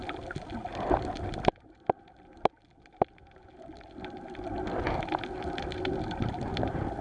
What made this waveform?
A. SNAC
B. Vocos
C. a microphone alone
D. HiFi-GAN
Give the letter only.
C